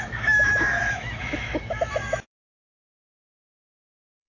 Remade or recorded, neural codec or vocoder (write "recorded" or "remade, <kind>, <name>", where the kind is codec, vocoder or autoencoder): remade, autoencoder, DAC-VAE